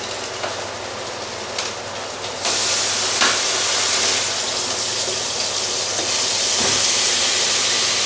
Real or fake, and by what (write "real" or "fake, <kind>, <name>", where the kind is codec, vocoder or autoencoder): real